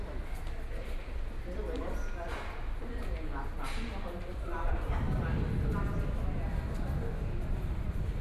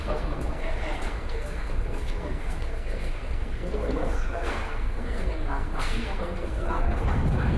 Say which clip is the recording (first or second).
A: first